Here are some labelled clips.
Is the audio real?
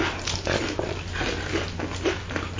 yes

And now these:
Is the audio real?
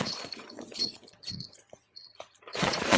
no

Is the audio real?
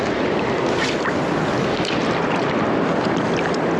yes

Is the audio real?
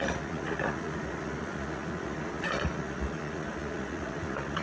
no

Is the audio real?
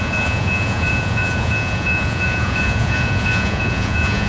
no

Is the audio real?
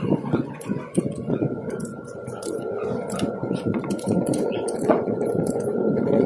no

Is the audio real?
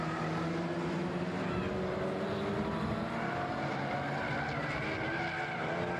yes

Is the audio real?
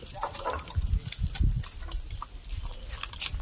yes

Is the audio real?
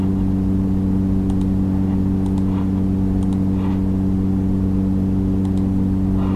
yes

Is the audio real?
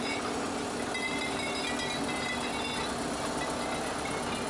yes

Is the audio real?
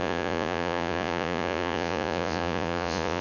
no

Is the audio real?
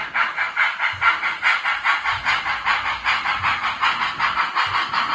yes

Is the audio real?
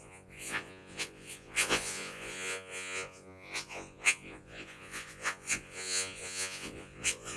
no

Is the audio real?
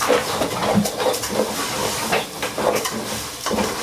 yes